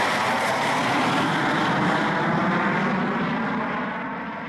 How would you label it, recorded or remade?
recorded